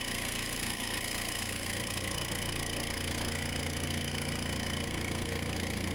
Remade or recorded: remade